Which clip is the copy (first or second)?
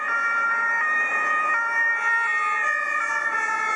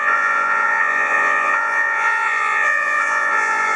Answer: second